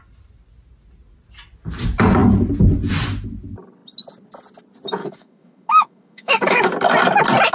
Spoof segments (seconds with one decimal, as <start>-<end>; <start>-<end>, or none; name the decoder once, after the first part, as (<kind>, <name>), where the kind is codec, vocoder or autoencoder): 5.0-6.7 (autoencoder, DAC-VAE)

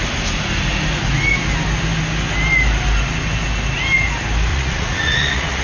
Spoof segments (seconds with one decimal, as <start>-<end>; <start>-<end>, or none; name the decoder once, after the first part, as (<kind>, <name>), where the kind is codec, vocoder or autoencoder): 4.5-5.6 (vocoder, Vocos)

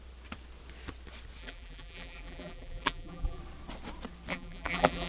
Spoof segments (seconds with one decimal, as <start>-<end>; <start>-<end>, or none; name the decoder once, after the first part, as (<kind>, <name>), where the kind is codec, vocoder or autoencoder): 1.4-3.4 (vocoder, BigVGAN v2); 4.3-5.1

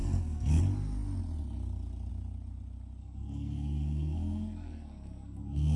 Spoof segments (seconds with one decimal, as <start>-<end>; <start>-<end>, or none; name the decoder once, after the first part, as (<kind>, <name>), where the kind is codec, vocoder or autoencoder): 0.0-0.6 (codec, SNAC); 3.0-5.8

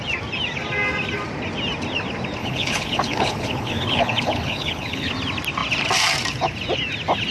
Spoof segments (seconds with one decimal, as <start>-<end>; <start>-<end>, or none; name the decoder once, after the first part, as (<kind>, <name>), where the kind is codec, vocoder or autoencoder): 2.4-5.1 (codec, HILCodec)

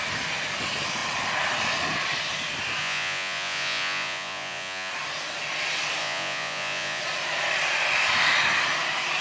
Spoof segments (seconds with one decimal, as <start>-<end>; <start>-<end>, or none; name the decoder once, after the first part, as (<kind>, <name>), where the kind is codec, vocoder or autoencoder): 2.8-4.9 (vocoder, Vocos); 6.0-7.0

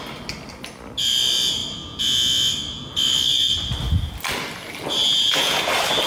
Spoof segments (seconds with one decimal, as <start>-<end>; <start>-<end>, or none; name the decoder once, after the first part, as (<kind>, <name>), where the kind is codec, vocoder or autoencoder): 5.0-5.6 (vocoder, Vocos)